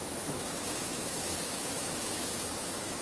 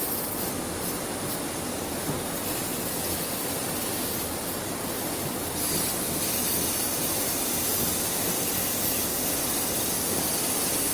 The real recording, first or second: second